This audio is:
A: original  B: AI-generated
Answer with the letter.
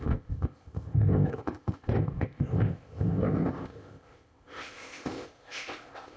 B